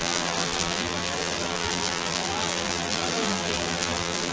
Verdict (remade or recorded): remade